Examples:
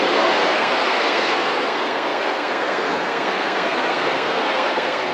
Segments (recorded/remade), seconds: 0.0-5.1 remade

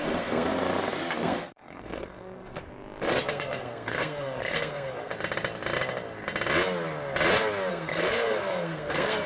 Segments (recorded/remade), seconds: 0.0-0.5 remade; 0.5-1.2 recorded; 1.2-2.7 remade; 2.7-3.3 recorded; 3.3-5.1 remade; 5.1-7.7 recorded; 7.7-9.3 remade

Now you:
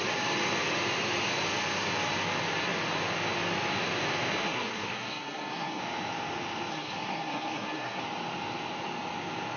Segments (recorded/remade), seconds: 0.0-4.4 recorded; 4.4-5.8 remade; 5.8-6.7 recorded; 6.7-8.0 remade; 8.0-9.6 recorded

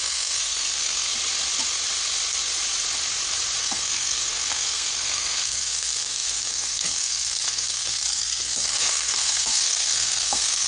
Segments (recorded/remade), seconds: 0.0-1.1 remade; 1.1-3.6 recorded; 3.6-10.7 remade

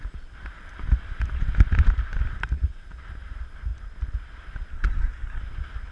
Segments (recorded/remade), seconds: 0.0-4.7 recorded; 4.7-5.4 remade; 5.4-5.9 recorded

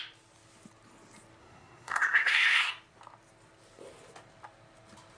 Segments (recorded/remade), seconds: 0.0-1.4 recorded; 1.4-2.7 remade; 2.7-5.2 recorded

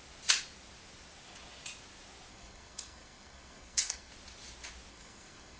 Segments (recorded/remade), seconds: 0.0-2.3 recorded; 2.3-4.1 remade; 4.1-4.9 recorded; 4.9-5.6 remade

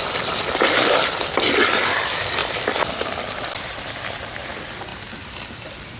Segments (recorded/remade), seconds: 0.0-6.0 recorded